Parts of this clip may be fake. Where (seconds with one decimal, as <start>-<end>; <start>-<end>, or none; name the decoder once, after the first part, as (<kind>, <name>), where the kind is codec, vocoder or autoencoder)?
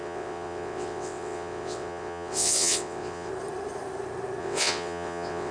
0.0-3.3 (vocoder, WaveNeXt); 4.4-5.5